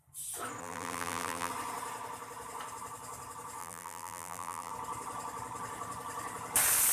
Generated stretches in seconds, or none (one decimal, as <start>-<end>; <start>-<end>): 0.6-1.5; 3.6-4.7